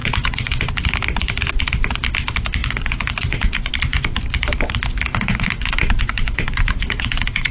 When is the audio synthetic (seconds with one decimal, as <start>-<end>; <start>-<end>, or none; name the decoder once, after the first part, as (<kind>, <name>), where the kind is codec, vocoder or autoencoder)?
0.0-0.6 (vocoder, Vocos); 2.6-3.7; 5.1-7.5